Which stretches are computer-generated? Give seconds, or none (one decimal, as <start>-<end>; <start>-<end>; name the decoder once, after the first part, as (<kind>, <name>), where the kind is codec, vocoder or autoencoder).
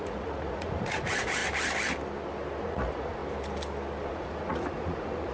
0.0-1.4 (vocoder, Vocos); 2.6-3.2; 4.1-5.3